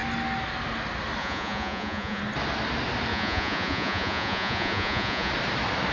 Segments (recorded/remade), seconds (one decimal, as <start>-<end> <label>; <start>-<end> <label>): 0.0-1.2 recorded; 1.2-2.2 remade; 2.2-3.1 recorded; 3.1-5.3 remade; 5.3-5.9 recorded